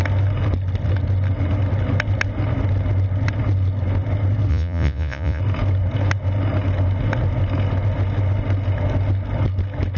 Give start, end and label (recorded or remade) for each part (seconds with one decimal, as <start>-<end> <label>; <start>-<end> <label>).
0.0-4.5 recorded; 4.5-5.4 remade; 5.4-10.0 recorded